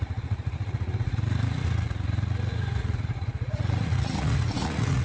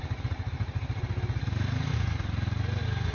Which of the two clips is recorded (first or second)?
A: second